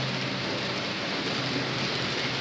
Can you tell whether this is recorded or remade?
recorded